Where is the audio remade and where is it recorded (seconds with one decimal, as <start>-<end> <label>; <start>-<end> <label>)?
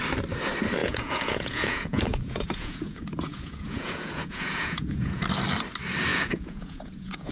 0.0-0.8 recorded; 0.8-5.2 remade; 5.2-6.1 recorded; 6.1-7.3 remade